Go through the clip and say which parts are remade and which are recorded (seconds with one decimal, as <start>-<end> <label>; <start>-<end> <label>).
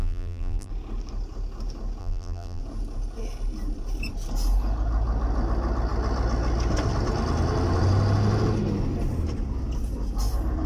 0.0-0.7 remade; 0.7-2.0 recorded; 2.0-2.6 remade; 2.6-10.7 recorded